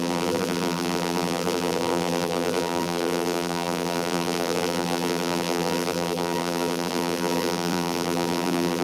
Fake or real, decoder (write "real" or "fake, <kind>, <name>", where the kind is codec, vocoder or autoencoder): fake, vocoder, BigVGAN v2